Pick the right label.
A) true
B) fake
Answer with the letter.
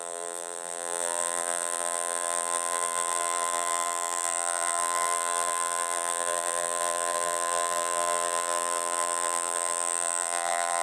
B